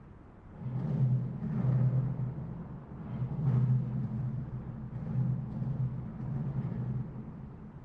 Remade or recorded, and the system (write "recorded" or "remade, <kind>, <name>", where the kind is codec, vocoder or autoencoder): recorded